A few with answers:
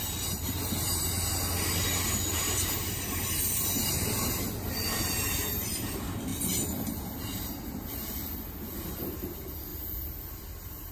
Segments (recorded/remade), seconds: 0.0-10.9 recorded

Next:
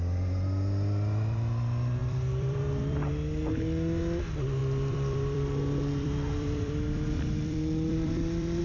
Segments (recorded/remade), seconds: 0.0-2.0 recorded; 2.0-3.1 remade; 3.1-4.6 recorded; 4.6-8.6 remade

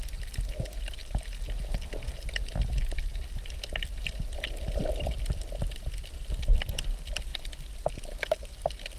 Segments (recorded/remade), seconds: 0.0-9.0 recorded

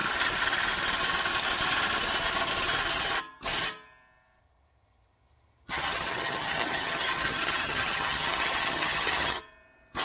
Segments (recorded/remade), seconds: 0.0-4.4 recorded; 4.4-9.4 remade; 9.4-10.0 recorded